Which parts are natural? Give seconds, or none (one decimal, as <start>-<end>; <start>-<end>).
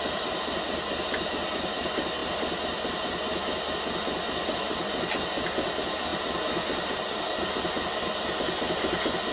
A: 0.0-9.3